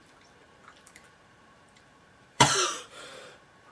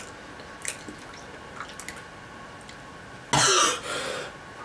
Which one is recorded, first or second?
second